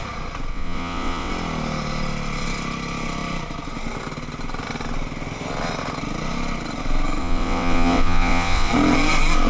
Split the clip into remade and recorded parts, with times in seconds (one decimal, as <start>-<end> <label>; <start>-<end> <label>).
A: 0.0-0.5 recorded; 0.5-1.3 remade; 1.3-7.2 recorded; 7.2-8.7 remade; 8.7-9.5 recorded

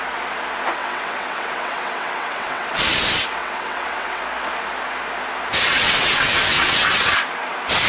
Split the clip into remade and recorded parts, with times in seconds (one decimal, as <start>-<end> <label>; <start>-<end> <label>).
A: 0.0-0.8 recorded; 0.8-2.8 remade; 2.8-3.4 recorded; 3.4-4.2 remade; 4.2-5.7 recorded; 5.7-7.1 remade; 7.1-7.9 recorded

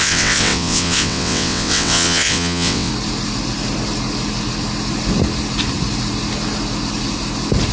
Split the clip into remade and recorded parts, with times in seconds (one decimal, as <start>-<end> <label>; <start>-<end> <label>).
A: 0.0-2.9 remade; 2.9-7.7 recorded

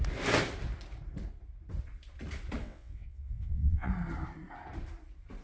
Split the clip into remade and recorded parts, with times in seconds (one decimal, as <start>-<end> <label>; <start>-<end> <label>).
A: 0.0-2.6 recorded; 2.6-3.9 remade; 3.9-5.4 recorded

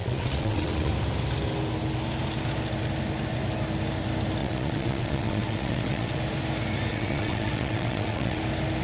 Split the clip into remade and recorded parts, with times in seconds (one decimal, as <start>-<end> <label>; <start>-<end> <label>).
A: 0.0-0.9 remade; 0.9-4.4 recorded; 4.4-6.2 remade; 6.2-6.9 recorded; 6.9-8.4 remade; 8.4-8.8 recorded

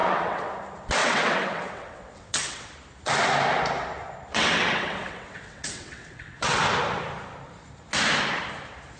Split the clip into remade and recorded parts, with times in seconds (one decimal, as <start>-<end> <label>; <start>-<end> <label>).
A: 0.0-0.5 remade; 0.5-1.0 recorded; 1.0-2.7 remade; 2.7-4.3 recorded; 4.3-6.6 remade; 6.6-9.0 recorded